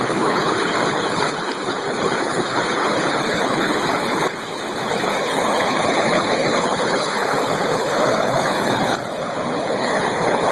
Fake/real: fake